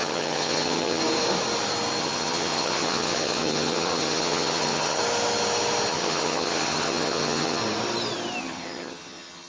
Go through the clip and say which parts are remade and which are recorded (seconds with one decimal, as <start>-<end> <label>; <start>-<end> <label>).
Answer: 0.0-1.0 remade; 1.0-2.0 recorded; 2.0-5.0 remade; 5.0-5.9 recorded; 5.9-7.6 remade; 7.6-8.4 recorded; 8.4-9.5 remade